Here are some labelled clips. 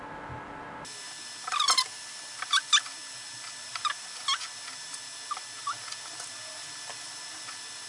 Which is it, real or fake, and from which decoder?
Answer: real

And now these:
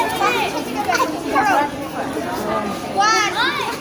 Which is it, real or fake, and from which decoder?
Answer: real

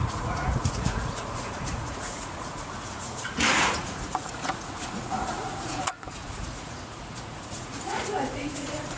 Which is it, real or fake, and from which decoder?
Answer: fake, vocoder, Vocos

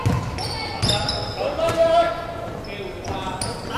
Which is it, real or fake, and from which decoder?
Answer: real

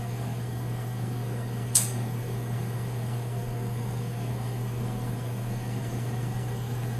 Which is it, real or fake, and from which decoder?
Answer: fake, codec, SNAC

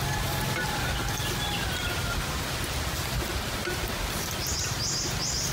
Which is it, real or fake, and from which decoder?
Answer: real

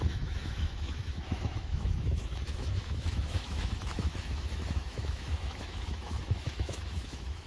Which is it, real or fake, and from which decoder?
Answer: fake, autoencoder, DAC-VAE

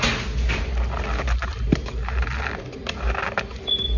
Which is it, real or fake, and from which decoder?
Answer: real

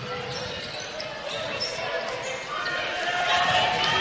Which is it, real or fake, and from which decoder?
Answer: real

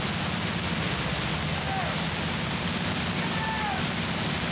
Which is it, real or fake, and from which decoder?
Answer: real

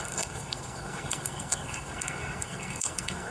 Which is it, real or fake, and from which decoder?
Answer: fake, codec, SNAC